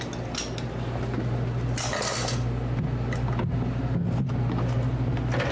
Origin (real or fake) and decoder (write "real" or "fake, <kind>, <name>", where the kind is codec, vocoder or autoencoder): real